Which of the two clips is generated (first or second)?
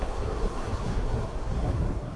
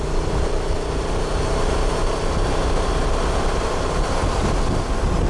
first